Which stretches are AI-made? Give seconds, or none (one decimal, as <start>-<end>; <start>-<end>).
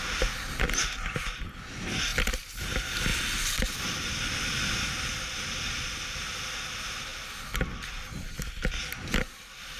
none